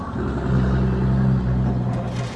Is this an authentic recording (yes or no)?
yes